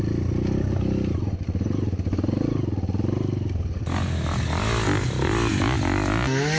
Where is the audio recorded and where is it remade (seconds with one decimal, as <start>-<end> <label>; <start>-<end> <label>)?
0.0-6.6 recorded